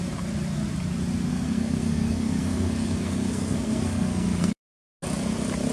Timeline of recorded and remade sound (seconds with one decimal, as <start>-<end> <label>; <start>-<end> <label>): 0.0-1.3 recorded; 1.3-4.7 remade; 4.7-5.7 recorded